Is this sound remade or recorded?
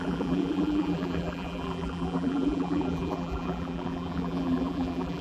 remade